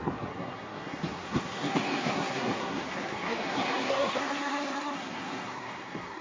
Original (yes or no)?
no